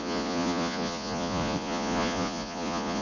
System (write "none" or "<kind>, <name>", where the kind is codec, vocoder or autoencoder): vocoder, Vocos